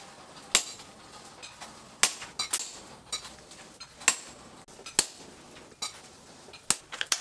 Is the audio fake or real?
real